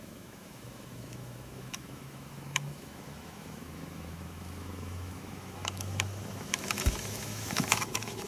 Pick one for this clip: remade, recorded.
remade